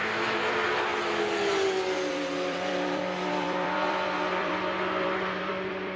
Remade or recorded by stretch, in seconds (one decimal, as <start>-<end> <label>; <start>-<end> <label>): 0.0-0.9 remade; 0.9-2.1 recorded; 2.1-6.0 remade